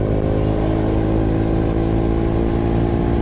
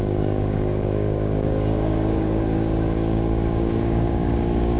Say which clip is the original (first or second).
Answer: first